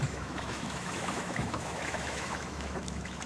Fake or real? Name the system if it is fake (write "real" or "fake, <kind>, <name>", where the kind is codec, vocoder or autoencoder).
fake, autoencoder, DAC-VAE